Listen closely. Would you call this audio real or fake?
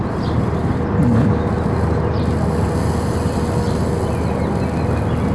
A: real